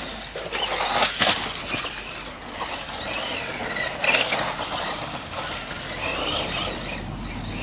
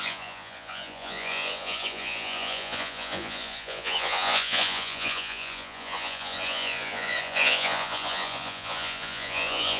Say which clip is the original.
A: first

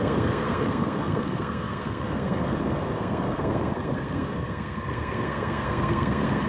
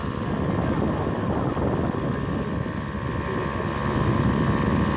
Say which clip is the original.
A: second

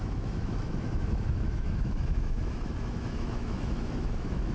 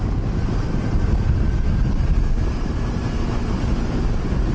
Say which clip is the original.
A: second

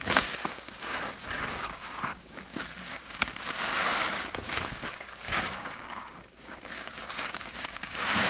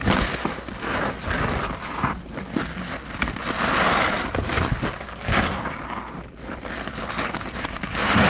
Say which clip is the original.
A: second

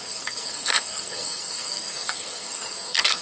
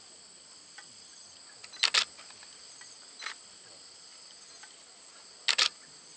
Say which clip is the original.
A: second